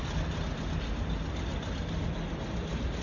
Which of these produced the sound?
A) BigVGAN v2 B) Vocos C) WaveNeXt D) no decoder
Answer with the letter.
D